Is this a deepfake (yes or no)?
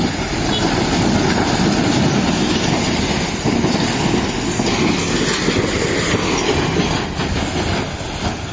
no